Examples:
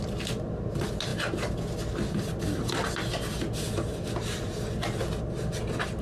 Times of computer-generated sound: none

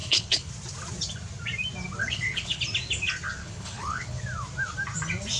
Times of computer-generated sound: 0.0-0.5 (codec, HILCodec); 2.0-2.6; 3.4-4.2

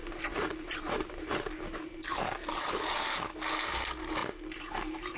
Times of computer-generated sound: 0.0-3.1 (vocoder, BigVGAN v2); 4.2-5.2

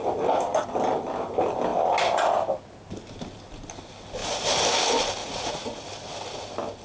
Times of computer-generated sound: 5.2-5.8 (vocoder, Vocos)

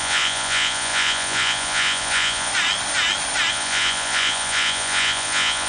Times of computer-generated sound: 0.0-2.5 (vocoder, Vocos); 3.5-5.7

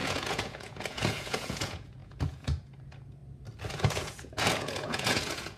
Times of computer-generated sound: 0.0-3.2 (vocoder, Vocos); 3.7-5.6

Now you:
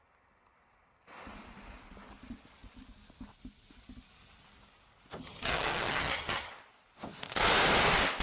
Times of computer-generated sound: 5.2-6.5 (vocoder, HiFi-GAN)